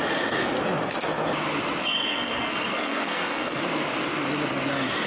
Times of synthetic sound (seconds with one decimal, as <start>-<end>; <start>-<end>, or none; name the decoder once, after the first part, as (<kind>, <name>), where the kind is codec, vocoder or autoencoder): 1.8-3.6 (codec, SNAC)